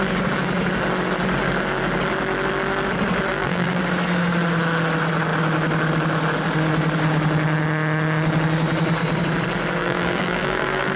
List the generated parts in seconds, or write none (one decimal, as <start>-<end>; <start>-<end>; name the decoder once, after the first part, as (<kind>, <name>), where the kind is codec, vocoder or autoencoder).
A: 3.3-3.8 (vocoder, BigVGAN v2); 9.8-11.0